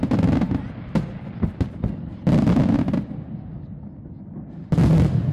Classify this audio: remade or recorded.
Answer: recorded